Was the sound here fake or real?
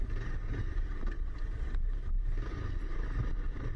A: real